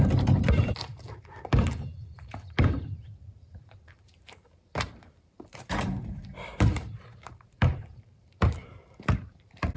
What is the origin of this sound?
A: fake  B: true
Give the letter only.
A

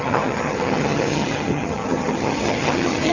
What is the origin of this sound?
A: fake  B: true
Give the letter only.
A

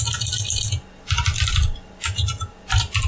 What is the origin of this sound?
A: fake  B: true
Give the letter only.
B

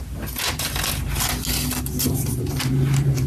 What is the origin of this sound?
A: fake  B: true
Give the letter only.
B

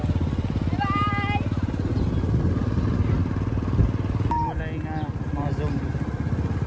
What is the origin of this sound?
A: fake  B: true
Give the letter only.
B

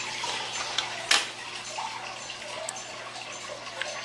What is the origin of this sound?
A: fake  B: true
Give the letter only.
B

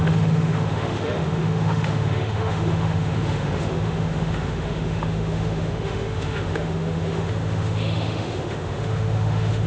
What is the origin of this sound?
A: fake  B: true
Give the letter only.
A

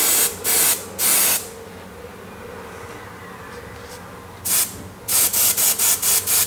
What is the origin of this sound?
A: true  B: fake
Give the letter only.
A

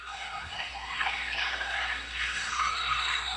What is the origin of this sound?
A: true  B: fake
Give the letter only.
B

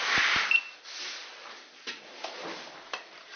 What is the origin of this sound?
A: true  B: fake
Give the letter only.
B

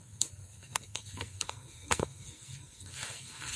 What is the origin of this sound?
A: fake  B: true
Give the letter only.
A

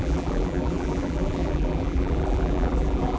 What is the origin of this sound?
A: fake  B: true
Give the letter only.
A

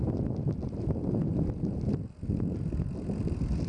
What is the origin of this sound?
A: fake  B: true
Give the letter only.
B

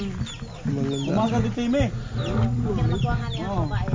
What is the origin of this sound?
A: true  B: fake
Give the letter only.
A